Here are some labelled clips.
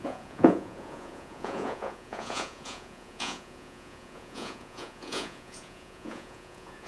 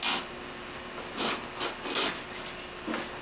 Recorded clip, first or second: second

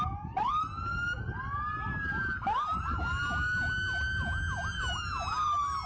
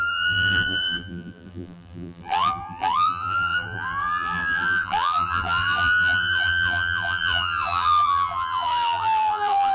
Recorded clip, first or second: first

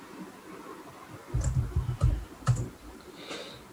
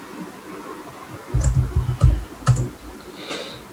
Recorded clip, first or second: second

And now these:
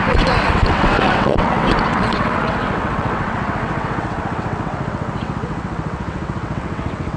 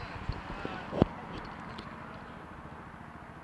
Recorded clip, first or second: second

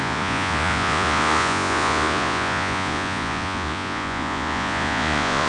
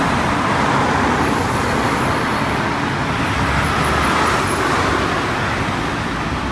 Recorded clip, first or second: second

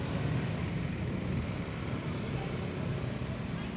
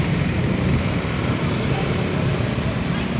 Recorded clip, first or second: first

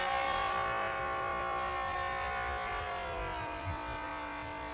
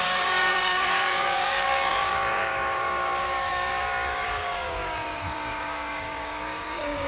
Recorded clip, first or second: first